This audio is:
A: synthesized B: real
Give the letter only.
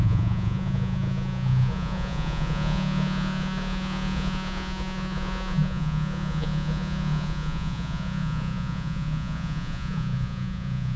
A